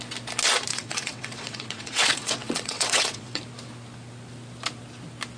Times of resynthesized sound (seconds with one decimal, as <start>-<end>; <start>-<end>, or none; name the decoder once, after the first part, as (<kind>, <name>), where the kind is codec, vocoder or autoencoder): 0.7-3.4 (vocoder, WaveNeXt)

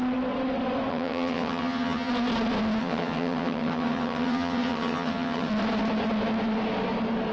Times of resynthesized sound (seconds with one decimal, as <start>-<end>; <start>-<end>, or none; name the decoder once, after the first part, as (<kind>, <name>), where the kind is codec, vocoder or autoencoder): 0.9-2.1 (vocoder, HiFi-GAN); 2.8-5.5

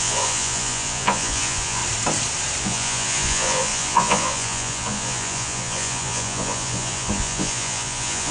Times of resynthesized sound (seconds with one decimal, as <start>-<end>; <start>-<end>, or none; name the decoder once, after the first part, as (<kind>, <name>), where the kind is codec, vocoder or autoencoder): 0.0-1.8 (vocoder, Vocos); 2.6-8.3

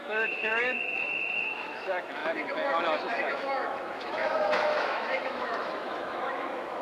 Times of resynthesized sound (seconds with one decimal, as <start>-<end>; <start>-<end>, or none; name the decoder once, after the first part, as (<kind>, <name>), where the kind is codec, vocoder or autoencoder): 0.0-6.8 (autoencoder, DAC-VAE)

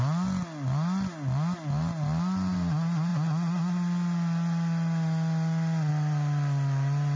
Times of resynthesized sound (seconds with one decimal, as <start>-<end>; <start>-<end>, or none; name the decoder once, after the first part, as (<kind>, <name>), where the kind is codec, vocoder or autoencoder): none